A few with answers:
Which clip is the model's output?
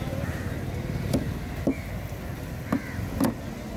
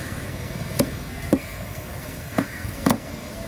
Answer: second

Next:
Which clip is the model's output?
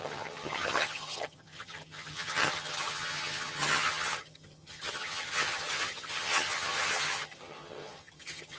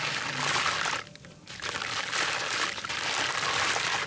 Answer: first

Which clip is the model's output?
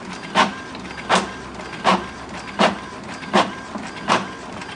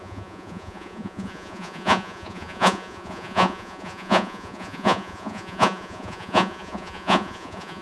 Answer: second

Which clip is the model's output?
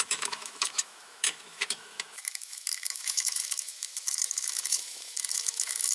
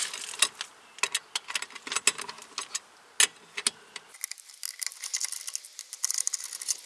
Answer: first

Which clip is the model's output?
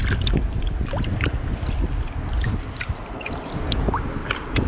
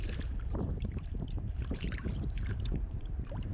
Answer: second